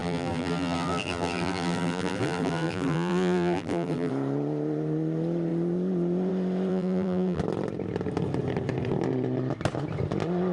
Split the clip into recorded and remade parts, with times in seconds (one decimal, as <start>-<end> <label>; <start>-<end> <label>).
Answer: 0.0-4.1 remade; 4.1-6.7 recorded; 6.7-7.4 remade; 7.4-10.5 recorded